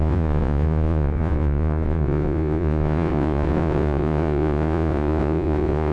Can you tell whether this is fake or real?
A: fake